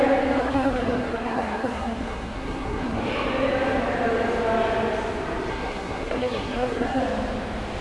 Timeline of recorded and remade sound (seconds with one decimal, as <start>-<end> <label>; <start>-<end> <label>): 0.0-0.4 recorded; 0.4-3.0 remade; 3.0-5.5 recorded; 5.5-7.0 remade; 7.0-7.8 recorded